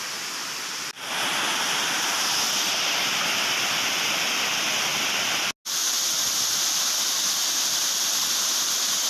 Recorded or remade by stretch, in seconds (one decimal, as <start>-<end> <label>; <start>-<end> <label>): 0.0-9.1 recorded